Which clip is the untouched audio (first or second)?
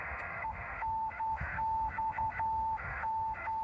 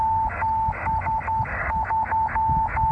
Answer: second